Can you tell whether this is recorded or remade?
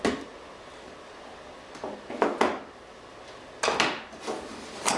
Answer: recorded